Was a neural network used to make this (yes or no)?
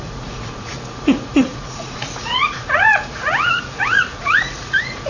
yes